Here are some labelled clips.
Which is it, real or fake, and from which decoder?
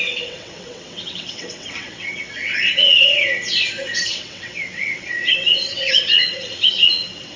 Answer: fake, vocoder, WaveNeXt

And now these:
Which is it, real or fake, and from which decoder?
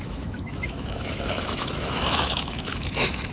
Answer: fake, autoencoder, DAC-VAE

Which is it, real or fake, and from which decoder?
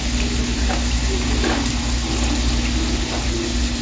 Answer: real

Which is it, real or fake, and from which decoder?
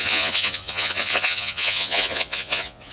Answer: fake, vocoder, Vocos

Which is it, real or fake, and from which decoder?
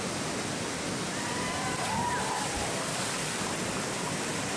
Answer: fake, vocoder, BigVGAN v2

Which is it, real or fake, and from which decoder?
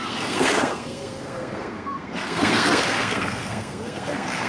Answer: fake, codec, SNAC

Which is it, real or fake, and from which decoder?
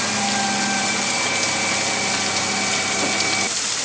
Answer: real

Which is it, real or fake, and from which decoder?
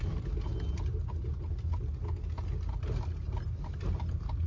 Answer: real